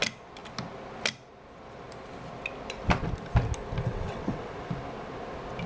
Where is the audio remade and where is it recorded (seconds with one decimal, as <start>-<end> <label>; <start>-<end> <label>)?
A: 0.0-3.8 recorded; 3.8-4.5 remade; 4.5-5.7 recorded